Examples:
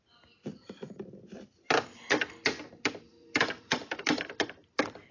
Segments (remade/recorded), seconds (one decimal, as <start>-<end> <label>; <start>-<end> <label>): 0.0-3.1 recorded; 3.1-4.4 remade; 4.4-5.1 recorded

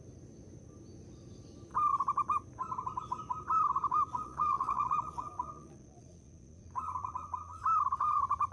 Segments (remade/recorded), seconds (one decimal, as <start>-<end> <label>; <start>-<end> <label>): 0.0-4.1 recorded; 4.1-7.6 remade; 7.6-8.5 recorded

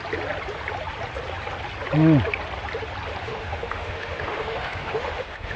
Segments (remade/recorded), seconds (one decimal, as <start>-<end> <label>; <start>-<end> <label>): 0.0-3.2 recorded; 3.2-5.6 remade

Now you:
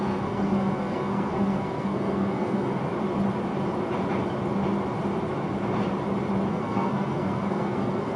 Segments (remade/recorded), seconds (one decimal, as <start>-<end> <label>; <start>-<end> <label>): 0.0-2.8 remade; 2.8-6.5 recorded; 6.5-8.2 remade

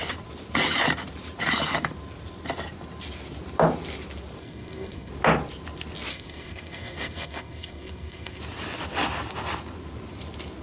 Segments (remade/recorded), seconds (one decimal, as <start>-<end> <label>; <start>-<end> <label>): 0.0-4.4 recorded; 4.4-5.1 remade; 5.1-6.1 recorded; 6.1-8.4 remade; 8.4-10.6 recorded